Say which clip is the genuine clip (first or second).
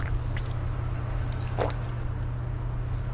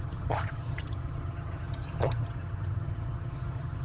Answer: first